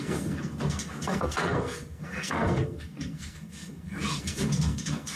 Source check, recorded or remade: remade